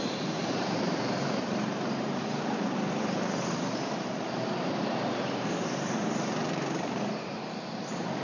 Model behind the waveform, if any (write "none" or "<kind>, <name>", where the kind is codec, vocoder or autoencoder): vocoder, BigVGAN v2